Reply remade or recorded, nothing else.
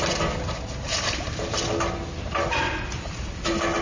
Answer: recorded